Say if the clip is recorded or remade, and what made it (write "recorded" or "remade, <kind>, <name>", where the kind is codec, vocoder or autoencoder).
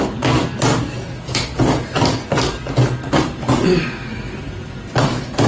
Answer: recorded